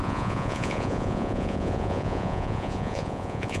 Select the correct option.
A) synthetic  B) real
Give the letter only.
A